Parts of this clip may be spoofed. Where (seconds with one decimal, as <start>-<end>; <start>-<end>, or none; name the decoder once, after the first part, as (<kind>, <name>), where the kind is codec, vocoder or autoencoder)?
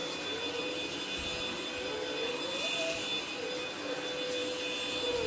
none